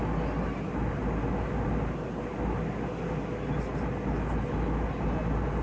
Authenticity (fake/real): real